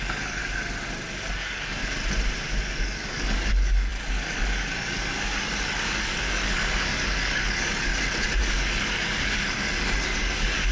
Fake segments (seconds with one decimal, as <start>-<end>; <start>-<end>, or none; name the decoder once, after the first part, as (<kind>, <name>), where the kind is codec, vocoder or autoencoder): 0.0-0.4 (codec, DAC); 1.4-1.8; 2.6-7.9; 8.4-10.7